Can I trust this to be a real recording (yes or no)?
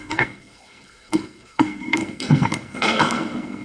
no